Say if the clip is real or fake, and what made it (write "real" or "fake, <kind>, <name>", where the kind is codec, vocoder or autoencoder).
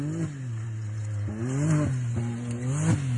real